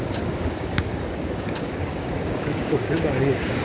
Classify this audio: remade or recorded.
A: remade